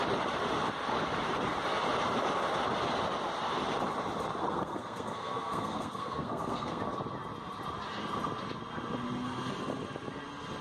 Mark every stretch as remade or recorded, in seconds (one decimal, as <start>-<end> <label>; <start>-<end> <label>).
0.0-4.4 recorded; 4.4-6.8 remade; 6.8-10.6 recorded